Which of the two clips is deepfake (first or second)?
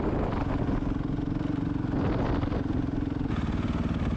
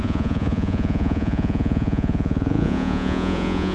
second